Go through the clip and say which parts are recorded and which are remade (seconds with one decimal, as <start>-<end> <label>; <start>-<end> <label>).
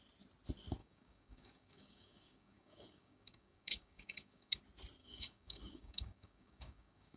0.0-0.8 recorded; 0.8-4.6 remade; 4.6-5.0 recorded; 5.0-7.2 remade